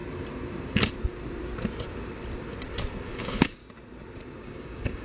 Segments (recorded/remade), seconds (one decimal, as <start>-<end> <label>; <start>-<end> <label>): 0.0-3.0 recorded; 3.0-3.6 remade; 3.6-4.4 recorded; 4.4-5.0 remade